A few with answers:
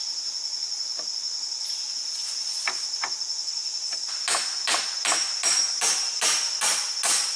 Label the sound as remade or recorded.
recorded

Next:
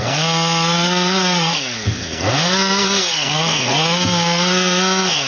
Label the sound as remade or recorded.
remade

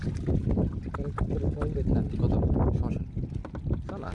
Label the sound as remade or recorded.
recorded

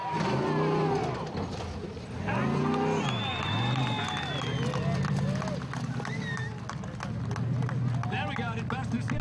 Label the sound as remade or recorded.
recorded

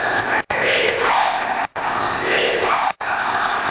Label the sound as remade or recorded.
remade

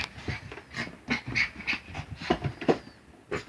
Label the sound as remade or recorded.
recorded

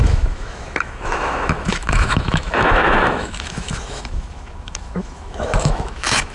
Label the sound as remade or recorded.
remade